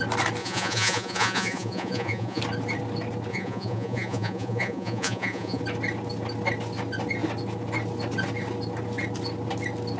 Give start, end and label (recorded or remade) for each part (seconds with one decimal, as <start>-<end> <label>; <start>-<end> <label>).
0.0-0.4 recorded; 0.4-2.4 remade; 2.4-3.3 recorded; 3.3-5.6 remade; 5.6-10.0 recorded